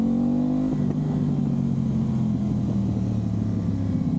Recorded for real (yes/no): yes